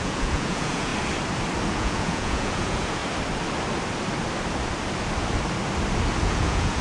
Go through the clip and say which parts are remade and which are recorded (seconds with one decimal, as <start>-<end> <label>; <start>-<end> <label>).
0.0-0.9 remade; 0.9-1.7 recorded; 1.7-3.0 remade; 3.0-6.2 recorded; 6.2-6.8 remade